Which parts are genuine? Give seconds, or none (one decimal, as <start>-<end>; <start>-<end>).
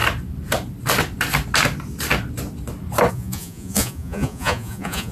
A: 0.0-3.1